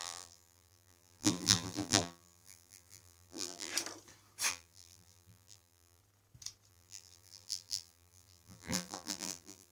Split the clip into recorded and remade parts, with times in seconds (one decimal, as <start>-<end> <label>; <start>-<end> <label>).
0.0-3.7 remade; 3.7-4.5 recorded; 4.5-6.0 remade; 6.0-6.7 recorded; 6.7-9.7 remade